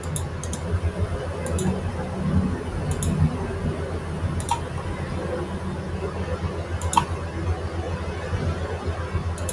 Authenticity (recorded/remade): recorded